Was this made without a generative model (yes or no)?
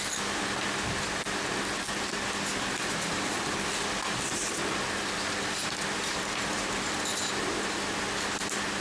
yes